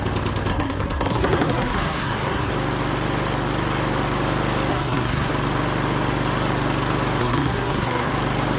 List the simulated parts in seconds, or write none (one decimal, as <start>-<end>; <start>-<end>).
0.5-2.5; 4.7-5.3; 7.2-8.1